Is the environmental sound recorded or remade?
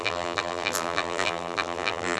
remade